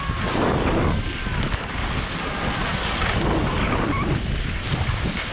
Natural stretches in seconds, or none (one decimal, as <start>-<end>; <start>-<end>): 0.0-5.3